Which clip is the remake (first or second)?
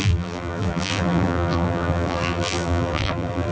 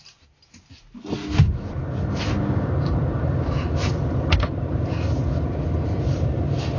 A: first